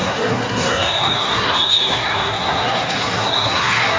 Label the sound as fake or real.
fake